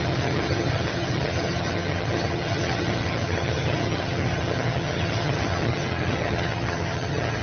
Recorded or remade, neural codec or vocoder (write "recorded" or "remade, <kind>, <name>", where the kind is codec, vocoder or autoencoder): remade, vocoder, HiFi-GAN